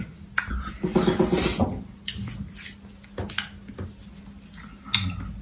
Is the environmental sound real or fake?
real